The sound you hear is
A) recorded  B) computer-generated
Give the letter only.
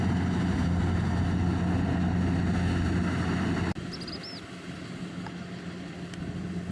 A